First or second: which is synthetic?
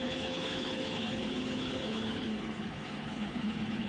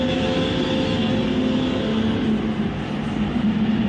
first